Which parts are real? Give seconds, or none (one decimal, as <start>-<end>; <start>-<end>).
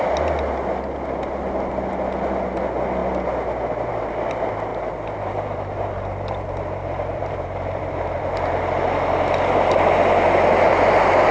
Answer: 0.0-4.7; 8.6-11.3